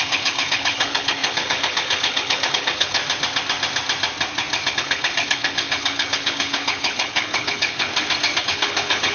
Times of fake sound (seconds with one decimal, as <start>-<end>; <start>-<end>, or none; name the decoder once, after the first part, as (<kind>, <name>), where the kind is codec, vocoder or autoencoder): 0.0-3.0 (codec, HILCodec); 4.7-7.9; 8.4-9.1